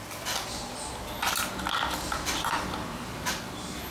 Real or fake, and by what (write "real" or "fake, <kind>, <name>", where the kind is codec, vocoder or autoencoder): real